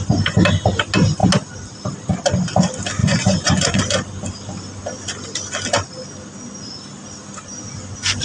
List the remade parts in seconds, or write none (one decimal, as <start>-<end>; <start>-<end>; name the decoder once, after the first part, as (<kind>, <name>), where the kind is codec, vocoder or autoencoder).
3.0-3.8 (vocoder, Vocos)